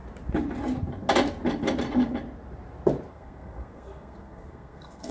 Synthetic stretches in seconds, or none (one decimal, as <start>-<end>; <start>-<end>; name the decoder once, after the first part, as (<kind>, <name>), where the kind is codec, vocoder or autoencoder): 3.1-5.1 (codec, SNAC)